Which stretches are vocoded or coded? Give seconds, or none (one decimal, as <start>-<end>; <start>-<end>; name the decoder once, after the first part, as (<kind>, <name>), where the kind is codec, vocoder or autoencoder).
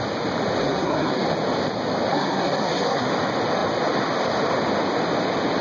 0.6-1.2 (codec, SNAC); 2.1-3.1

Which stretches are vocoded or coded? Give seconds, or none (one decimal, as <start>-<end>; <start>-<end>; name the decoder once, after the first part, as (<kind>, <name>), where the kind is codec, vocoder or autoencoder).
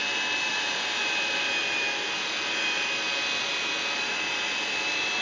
0.5-1.0 (vocoder, BigVGAN v2); 4.0-5.2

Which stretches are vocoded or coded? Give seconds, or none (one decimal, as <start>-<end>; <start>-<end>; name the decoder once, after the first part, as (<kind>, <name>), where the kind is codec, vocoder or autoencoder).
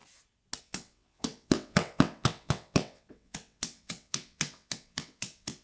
0.6-5.6 (vocoder, WaveNeXt)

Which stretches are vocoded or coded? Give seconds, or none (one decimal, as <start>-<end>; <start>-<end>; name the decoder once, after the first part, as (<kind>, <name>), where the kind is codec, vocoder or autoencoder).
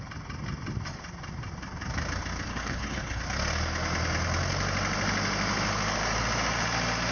2.5-3.2 (codec, HILCodec)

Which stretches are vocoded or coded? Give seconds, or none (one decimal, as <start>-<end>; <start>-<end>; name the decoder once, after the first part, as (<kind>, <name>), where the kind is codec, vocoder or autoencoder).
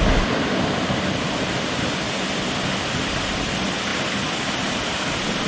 none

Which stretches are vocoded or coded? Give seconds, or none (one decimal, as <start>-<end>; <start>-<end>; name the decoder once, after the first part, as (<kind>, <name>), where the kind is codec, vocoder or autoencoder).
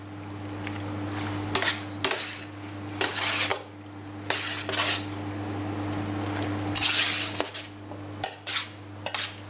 none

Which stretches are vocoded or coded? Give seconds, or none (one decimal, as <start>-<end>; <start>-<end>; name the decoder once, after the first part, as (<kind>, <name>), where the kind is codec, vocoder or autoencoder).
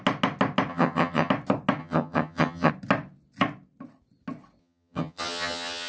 0.7-1.3 (vocoder, HiFi-GAN); 1.8-2.7; 4.6-5.9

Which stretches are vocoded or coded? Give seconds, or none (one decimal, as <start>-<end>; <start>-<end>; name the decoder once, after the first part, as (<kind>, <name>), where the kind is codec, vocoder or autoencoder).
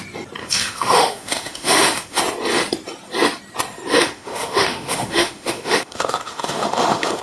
0.4-2.2 (autoencoder, DAC-VAE); 3.9-7.2